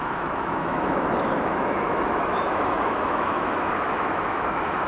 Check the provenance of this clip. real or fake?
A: fake